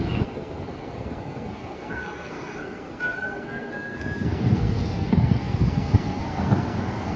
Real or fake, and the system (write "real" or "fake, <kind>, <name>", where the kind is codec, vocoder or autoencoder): fake, codec, SNAC